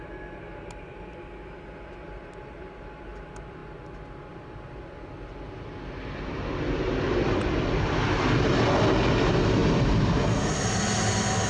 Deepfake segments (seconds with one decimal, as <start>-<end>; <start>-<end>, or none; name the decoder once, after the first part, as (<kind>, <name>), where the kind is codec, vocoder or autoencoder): none